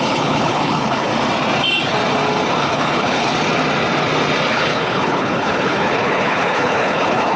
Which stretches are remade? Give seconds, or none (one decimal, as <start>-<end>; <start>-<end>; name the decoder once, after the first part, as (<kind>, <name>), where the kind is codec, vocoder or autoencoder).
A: 0.0-1.1 (codec, HILCodec); 2.6-3.3; 4.5-7.4